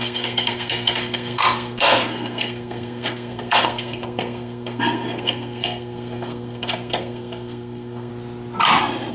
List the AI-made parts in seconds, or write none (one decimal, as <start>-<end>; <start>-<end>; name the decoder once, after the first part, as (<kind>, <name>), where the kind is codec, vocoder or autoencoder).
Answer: 0.0-8.1 (codec, SNAC)